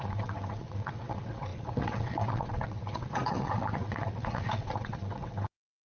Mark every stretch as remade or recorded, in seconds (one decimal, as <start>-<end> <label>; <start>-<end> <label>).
0.0-5.8 remade